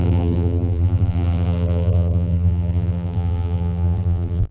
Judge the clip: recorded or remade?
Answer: remade